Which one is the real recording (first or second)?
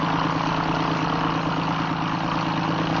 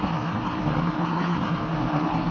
first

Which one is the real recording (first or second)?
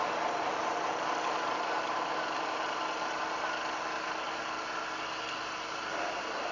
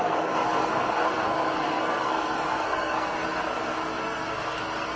first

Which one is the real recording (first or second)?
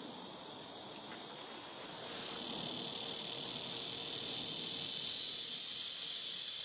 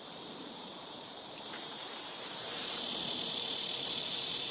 first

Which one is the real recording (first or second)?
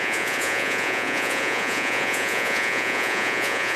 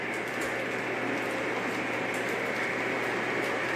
second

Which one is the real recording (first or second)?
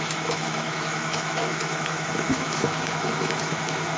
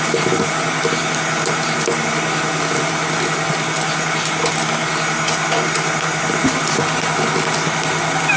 second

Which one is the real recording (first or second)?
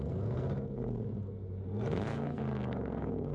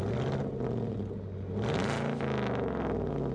second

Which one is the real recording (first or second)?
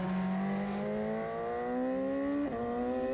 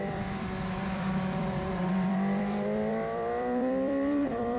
first